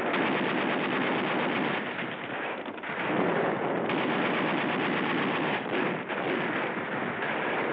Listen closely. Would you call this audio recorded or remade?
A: recorded